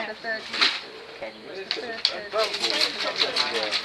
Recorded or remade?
recorded